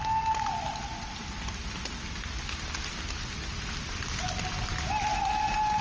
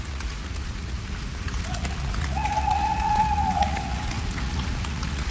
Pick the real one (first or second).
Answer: first